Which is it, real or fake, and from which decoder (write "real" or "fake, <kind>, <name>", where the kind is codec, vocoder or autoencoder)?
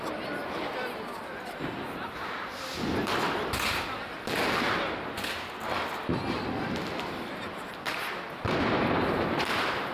real